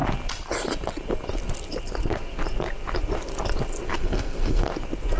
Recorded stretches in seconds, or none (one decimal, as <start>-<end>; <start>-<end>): 0.0-3.9; 4.7-5.2